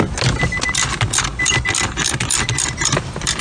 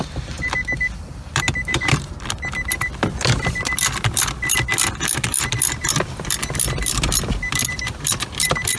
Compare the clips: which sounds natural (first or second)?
first